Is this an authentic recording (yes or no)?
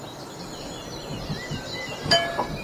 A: yes